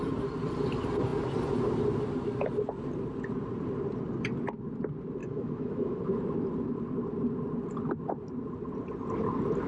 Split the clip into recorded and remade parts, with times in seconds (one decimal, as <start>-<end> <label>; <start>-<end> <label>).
0.0-5.2 recorded; 5.2-6.0 remade; 6.0-9.7 recorded